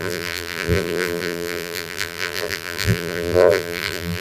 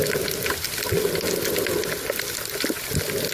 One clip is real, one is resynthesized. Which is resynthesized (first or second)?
first